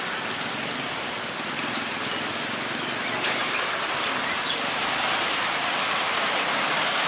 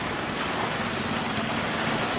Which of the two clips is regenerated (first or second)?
first